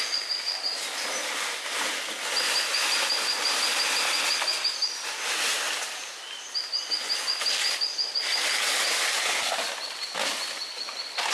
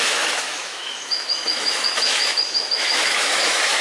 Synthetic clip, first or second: second